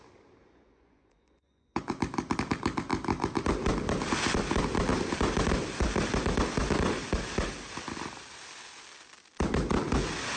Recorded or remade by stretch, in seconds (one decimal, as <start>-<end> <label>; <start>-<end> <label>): 0.0-0.4 recorded; 0.4-2.0 remade; 2.0-10.4 recorded